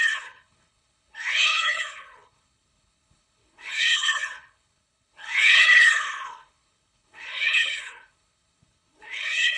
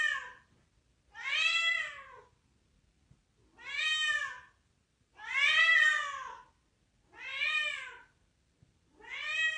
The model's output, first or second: first